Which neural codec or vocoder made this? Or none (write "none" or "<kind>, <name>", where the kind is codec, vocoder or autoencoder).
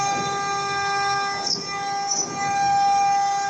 none